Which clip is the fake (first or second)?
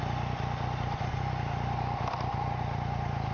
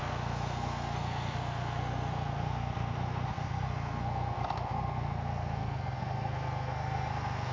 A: second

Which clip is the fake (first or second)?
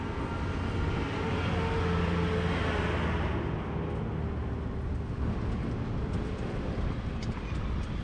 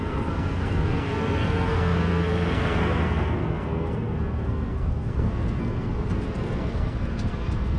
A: second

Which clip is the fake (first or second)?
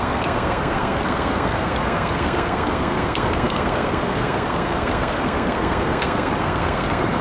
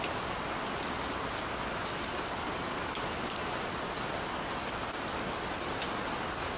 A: first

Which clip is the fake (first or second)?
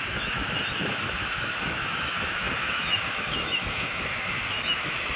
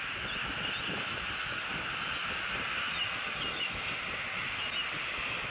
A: first